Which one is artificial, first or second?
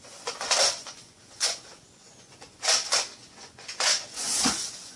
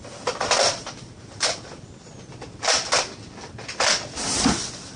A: first